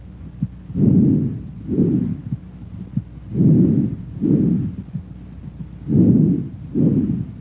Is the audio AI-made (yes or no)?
no